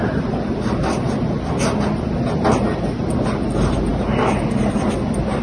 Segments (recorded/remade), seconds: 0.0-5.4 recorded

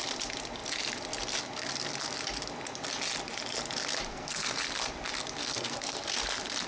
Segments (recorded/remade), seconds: 0.0-4.1 recorded; 4.1-4.6 remade; 4.6-5.4 recorded; 5.4-6.2 remade; 6.2-6.7 recorded

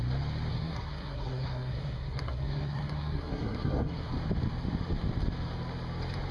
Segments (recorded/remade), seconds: 0.0-0.5 recorded; 0.5-4.1 remade; 4.1-6.3 recorded

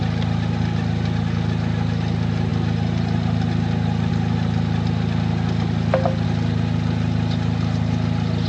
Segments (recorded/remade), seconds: 0.0-8.5 recorded

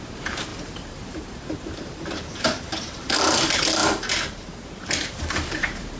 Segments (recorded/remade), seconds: 0.0-6.0 remade

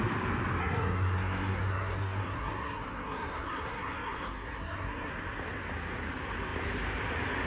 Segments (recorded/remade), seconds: 0.0-0.6 recorded; 0.6-5.1 remade; 5.1-7.5 recorded

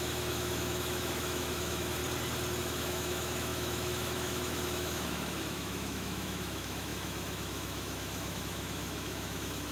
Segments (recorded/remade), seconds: 0.0-2.0 remade; 2.0-2.6 recorded; 2.6-9.7 remade